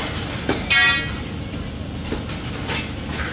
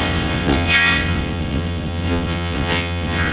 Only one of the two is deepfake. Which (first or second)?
second